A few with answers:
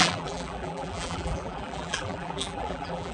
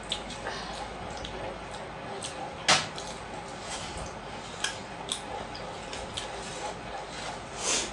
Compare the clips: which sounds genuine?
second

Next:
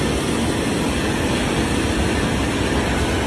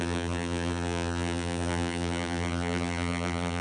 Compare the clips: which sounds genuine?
first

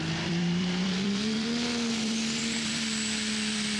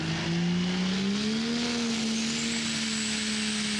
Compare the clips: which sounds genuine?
second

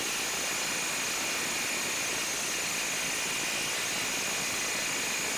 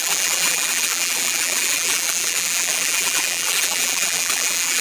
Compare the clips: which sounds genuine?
first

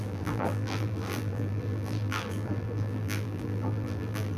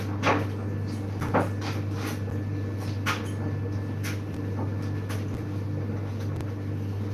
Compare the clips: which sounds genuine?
second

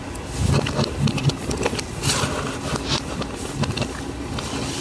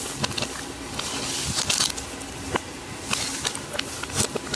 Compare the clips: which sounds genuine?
second